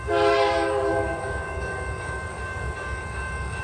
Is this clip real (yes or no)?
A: no